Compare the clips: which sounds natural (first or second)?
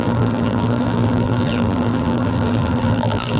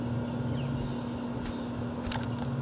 second